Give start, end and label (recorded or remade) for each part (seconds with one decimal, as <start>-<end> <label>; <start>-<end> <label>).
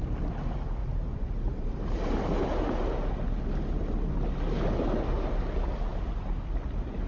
0.0-0.8 recorded; 0.8-2.0 remade; 2.0-5.9 recorded; 5.9-6.4 remade; 6.4-7.1 recorded